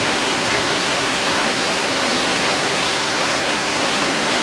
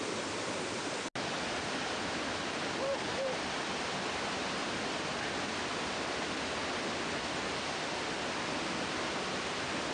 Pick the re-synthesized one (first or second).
first